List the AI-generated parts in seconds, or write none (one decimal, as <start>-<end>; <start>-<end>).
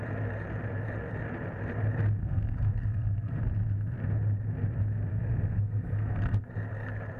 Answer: 2.2-3.4; 5.1-6.4